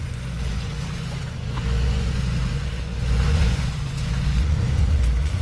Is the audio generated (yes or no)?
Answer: yes